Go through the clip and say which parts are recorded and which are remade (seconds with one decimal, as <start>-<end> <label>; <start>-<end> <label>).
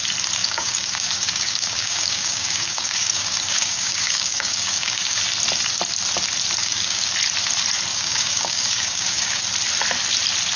0.0-0.4 recorded; 0.4-5.2 remade; 5.2-6.6 recorded; 6.6-7.1 remade; 7.1-7.9 recorded; 7.9-9.4 remade; 9.4-10.6 recorded